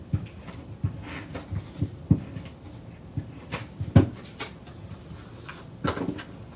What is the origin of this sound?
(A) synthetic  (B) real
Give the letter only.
B